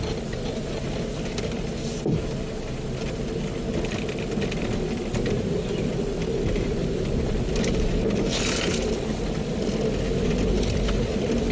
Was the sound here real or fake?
real